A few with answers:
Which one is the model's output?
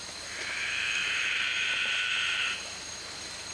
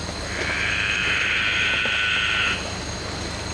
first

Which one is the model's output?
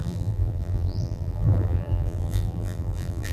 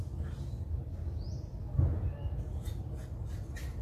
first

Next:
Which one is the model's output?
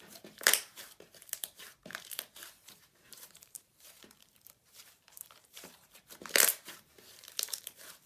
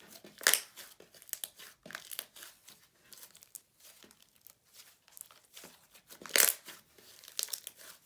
first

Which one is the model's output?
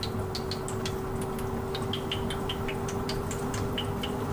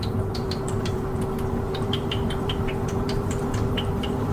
second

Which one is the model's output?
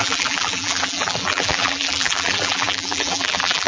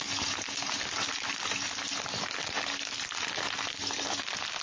first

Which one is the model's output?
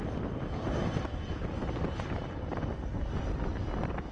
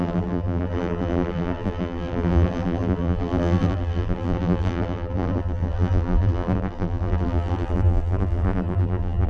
second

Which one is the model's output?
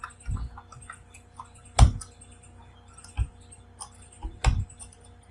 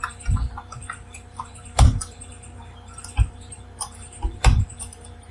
second